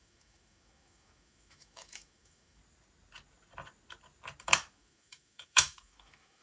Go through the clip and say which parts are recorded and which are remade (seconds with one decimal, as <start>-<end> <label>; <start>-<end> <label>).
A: 0.0-2.6 remade; 2.6-4.4 recorded; 4.4-6.4 remade